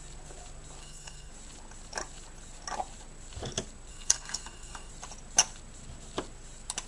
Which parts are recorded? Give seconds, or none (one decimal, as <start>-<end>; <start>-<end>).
0.0-0.8; 1.3-3.9; 4.9-6.9